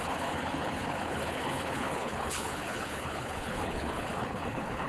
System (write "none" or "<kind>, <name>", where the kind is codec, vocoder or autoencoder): codec, HILCodec